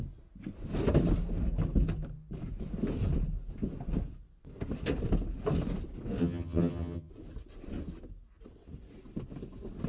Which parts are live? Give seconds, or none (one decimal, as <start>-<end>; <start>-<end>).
0.0-6.2; 7.1-9.9

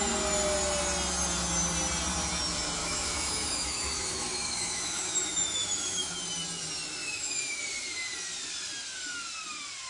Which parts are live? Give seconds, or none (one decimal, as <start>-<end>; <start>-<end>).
0.0-2.8; 6.2-7.0; 7.6-9.9

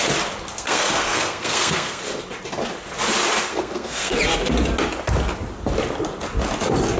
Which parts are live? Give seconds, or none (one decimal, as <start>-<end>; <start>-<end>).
0.0-0.5; 2.0-3.5; 4.2-7.0